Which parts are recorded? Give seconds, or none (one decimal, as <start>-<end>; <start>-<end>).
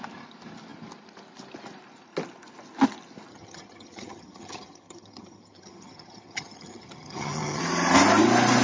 0.0-3.3; 7.6-8.6